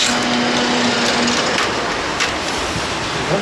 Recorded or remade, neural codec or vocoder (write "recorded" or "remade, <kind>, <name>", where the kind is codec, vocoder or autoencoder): recorded